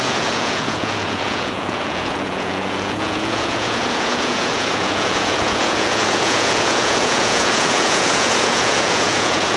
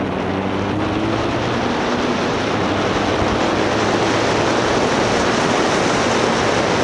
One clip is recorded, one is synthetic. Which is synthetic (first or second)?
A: first